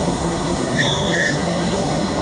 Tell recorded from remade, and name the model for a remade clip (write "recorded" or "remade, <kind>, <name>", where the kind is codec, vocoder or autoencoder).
remade, codec, SNAC